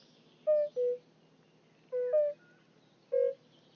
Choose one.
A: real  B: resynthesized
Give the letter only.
A